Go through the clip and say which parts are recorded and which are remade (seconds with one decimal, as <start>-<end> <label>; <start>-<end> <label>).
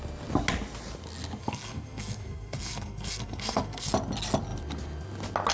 0.0-1.4 recorded; 1.4-3.9 remade; 3.9-5.5 recorded